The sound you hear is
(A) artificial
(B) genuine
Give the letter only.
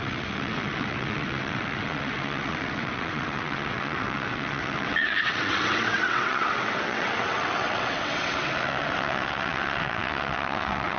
A